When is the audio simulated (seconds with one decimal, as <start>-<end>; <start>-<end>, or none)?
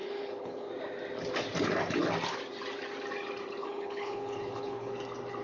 0.0-0.7; 3.6-4.9